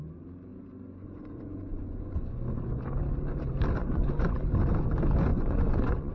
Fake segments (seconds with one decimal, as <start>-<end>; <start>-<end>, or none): 0.5-2.6; 3.8-4.5; 5.3-6.1

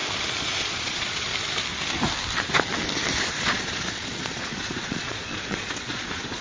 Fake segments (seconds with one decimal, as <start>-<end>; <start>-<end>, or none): 0.6-1.3; 3.2-6.4

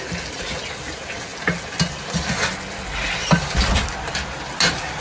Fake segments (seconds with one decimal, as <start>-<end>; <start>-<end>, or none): none

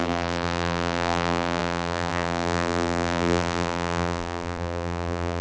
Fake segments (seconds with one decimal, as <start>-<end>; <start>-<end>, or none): 0.0-5.4

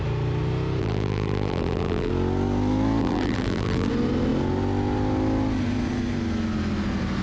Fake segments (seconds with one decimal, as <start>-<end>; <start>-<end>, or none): 0.8-2.1; 3.0-3.9

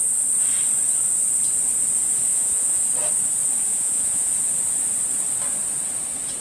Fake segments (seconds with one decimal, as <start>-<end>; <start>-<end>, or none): 2.3-2.8; 3.7-4.3

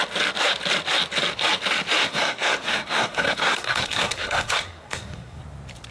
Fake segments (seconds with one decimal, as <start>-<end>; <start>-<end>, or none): 2.0-5.4